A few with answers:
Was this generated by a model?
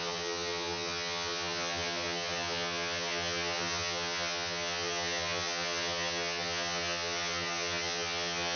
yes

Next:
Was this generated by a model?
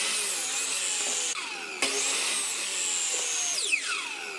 no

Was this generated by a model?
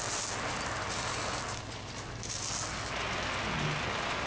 no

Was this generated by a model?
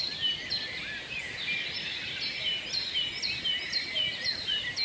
no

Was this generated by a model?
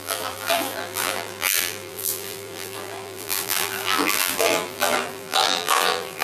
yes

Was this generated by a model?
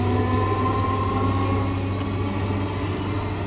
no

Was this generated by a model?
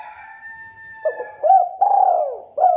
no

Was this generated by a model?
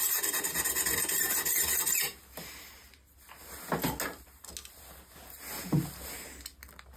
no